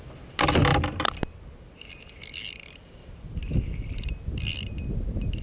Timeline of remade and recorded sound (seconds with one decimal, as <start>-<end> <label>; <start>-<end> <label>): 0.0-5.4 recorded